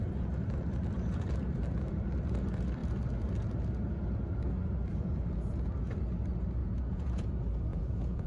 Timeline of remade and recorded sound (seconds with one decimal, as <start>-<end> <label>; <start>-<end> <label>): 0.0-6.6 recorded; 6.6-7.3 remade; 7.3-7.7 recorded; 7.7-8.3 remade